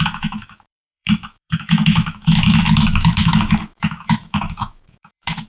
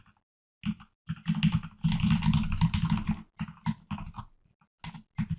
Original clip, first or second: second